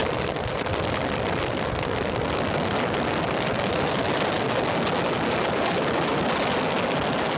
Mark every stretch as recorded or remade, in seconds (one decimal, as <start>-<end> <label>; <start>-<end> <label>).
0.0-7.4 recorded